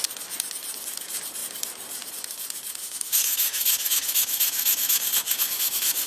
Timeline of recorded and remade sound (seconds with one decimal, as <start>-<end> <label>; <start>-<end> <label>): 0.0-2.8 recorded; 2.8-6.1 remade